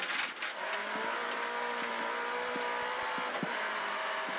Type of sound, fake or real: real